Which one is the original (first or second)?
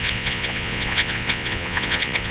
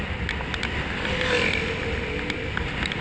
second